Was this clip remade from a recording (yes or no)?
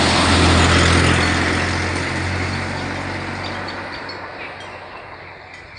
no